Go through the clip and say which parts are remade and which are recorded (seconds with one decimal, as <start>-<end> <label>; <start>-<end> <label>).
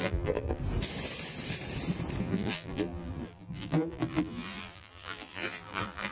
0.0-0.6 remade; 0.6-2.2 recorded; 2.2-6.1 remade